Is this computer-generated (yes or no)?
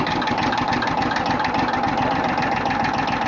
no